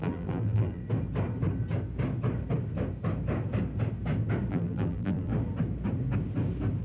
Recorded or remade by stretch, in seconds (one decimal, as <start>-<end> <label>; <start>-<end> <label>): 0.0-0.8 remade; 0.8-4.5 recorded; 4.5-5.3 remade; 5.3-6.8 recorded